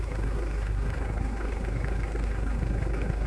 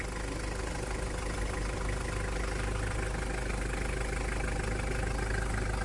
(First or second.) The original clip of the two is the second